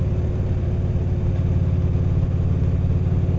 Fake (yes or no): no